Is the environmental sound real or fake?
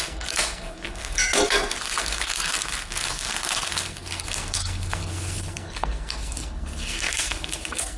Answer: fake